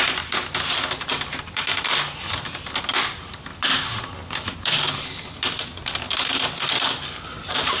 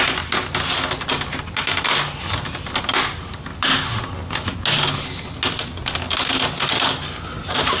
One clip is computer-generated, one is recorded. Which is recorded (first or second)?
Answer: second